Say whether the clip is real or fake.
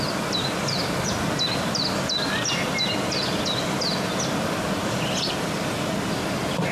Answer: real